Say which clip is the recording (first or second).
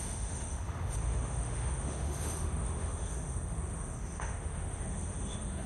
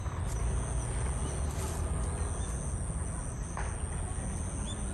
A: second